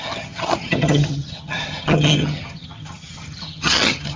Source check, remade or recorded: remade